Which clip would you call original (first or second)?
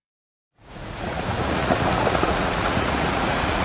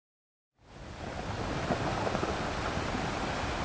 second